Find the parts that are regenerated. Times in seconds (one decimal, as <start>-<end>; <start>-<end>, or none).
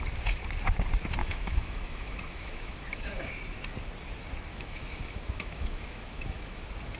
1.2-3.3; 4.5-6.6